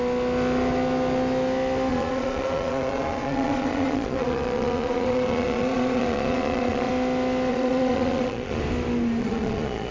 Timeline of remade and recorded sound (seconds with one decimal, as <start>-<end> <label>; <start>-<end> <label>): 0.0-1.9 recorded; 1.9-6.9 remade; 6.9-7.5 recorded; 7.5-8.6 remade; 8.6-9.2 recorded; 9.2-9.9 remade

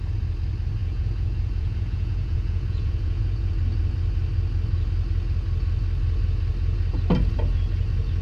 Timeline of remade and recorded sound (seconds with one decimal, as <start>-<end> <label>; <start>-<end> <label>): 0.0-0.8 recorded; 0.8-3.5 remade; 3.5-8.2 recorded

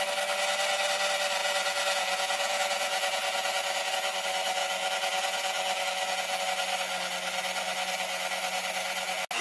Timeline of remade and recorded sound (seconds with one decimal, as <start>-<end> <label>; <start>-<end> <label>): 0.0-1.4 recorded; 1.4-3.9 remade; 3.9-4.6 recorded; 4.6-6.4 remade; 6.4-9.4 recorded